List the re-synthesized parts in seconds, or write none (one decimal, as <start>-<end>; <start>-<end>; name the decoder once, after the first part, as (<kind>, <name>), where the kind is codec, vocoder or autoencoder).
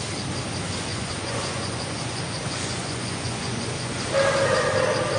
0.9-4.0 (vocoder, Vocos)